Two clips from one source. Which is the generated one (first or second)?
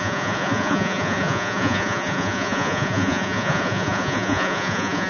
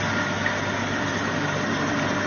first